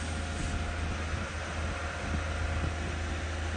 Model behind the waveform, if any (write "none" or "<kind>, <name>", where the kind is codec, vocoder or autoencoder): none